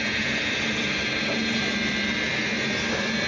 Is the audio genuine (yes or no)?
yes